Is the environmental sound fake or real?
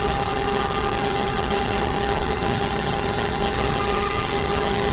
fake